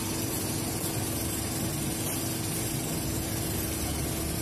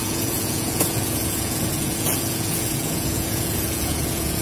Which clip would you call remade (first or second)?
second